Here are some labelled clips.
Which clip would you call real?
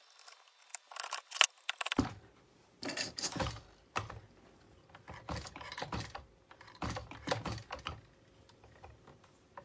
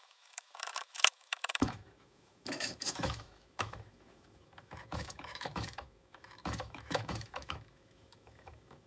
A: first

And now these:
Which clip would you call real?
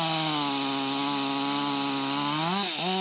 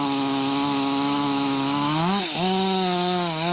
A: first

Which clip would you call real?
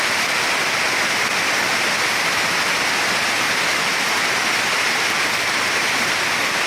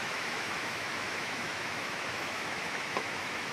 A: first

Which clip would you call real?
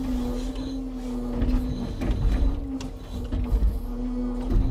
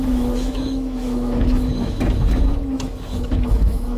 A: first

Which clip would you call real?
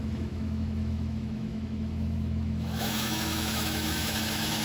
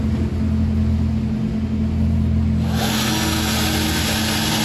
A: second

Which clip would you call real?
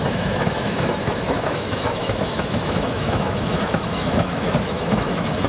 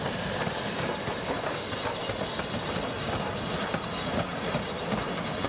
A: second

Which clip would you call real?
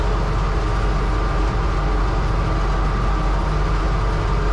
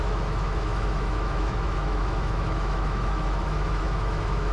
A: first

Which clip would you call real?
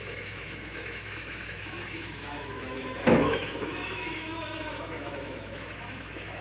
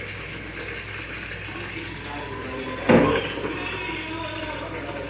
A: second